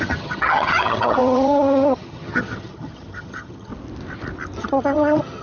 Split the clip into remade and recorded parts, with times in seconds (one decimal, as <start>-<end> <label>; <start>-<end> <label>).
0.0-3.7 remade; 3.7-4.6 recorded; 4.6-5.4 remade